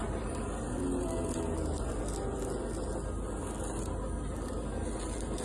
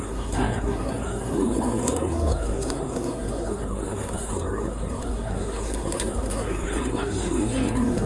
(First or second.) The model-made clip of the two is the second